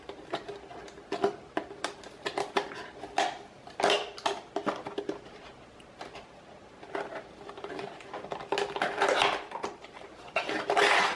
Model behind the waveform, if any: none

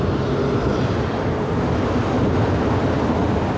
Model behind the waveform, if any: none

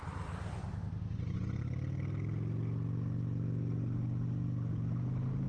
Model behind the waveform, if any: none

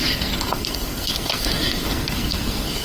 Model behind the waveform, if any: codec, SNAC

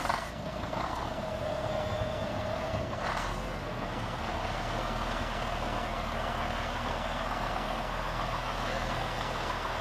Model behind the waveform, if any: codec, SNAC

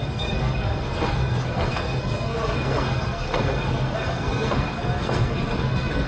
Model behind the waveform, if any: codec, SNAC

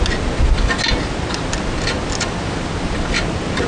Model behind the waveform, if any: none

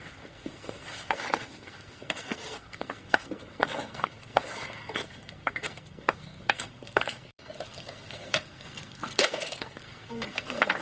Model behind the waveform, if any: codec, SNAC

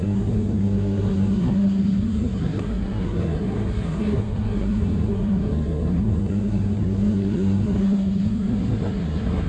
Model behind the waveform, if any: codec, SNAC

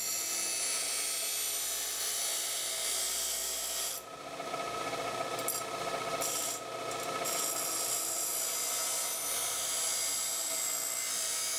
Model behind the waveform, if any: none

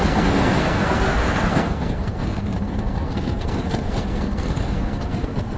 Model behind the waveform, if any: codec, SNAC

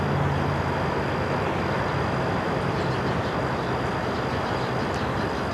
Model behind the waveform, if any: none